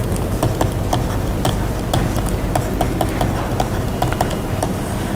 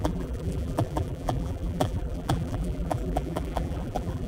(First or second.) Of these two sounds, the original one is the first